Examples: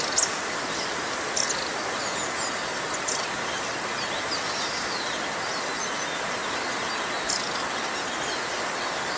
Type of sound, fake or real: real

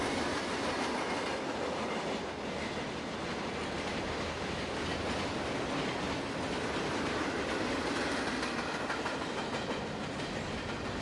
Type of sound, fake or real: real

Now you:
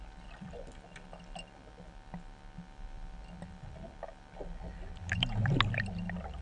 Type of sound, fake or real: real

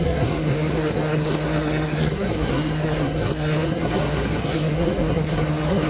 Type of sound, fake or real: fake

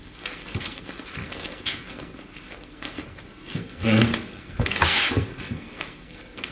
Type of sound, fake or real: fake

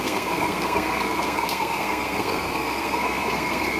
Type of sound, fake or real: fake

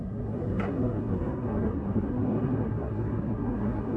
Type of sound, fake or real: fake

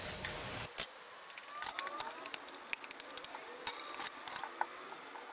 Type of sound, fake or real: real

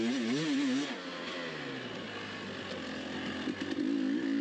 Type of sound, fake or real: real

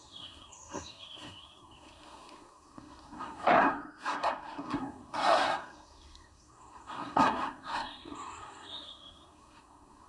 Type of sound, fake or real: fake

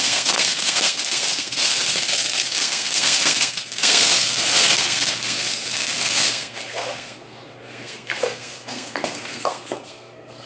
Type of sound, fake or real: fake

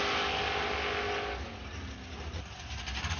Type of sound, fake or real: real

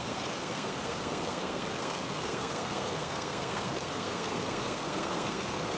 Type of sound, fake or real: fake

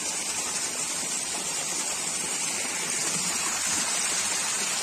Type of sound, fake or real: real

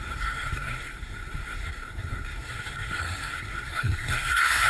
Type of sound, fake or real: fake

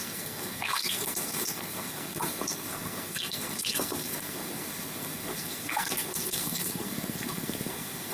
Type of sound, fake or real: fake